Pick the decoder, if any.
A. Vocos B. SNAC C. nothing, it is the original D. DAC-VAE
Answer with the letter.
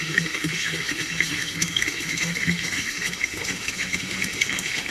D